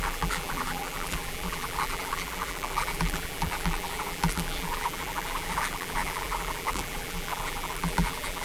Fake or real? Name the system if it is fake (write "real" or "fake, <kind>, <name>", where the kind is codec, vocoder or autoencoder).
fake, vocoder, BigVGAN v2